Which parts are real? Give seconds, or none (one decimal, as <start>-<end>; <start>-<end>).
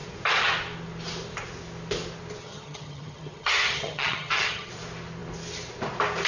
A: 0.0-2.4; 4.7-6.3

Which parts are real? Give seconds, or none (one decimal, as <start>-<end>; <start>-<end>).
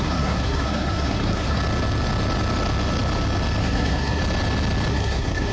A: 1.6-3.6; 4.2-4.9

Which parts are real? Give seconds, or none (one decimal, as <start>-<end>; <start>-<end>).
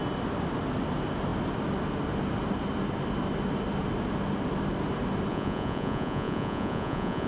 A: 0.0-5.3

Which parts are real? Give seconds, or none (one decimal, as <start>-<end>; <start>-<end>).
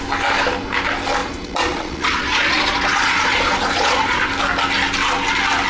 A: 0.0-1.2; 4.3-5.7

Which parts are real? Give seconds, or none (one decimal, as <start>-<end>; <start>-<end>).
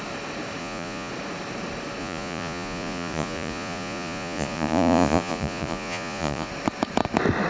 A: 0.0-0.6; 1.1-2.0; 6.5-7.5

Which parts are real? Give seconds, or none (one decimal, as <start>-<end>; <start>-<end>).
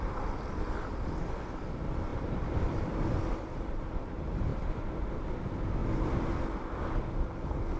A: 0.0-2.1; 3.1-5.8; 6.3-7.8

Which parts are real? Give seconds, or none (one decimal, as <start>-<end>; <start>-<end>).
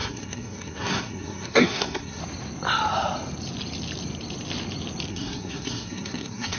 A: 2.2-5.1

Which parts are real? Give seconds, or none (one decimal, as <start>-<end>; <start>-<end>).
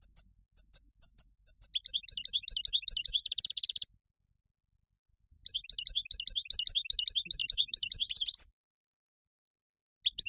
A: 0.0-3.0; 3.5-7.4; 8.5-10.3